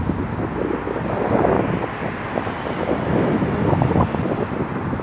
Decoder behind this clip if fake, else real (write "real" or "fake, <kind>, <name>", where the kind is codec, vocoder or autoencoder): real